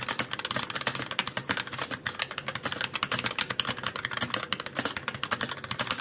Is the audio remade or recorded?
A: recorded